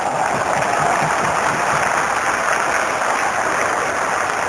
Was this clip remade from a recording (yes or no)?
no